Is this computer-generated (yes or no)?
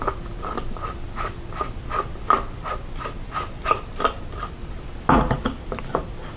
no